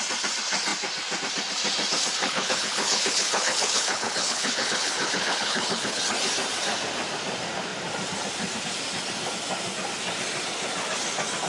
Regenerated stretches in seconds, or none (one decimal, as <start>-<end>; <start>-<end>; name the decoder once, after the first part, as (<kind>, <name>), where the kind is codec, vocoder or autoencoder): 2.2-6.0 (codec, HILCodec)